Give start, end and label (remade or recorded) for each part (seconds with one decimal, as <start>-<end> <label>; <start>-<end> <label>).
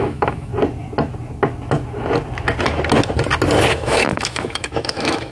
0.0-0.5 remade; 0.5-3.7 recorded; 3.7-5.3 remade